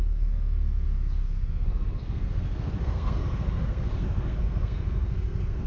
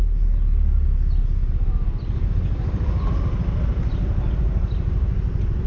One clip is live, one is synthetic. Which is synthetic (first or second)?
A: first